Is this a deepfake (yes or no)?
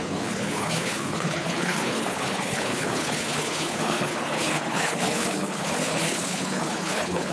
yes